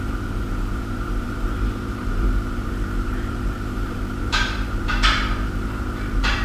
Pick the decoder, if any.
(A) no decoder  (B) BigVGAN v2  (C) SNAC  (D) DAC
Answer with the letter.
B